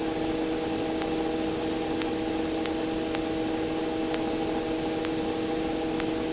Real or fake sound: real